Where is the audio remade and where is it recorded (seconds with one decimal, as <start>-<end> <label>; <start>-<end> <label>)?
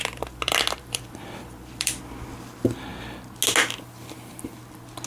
0.0-2.0 remade; 2.0-5.1 recorded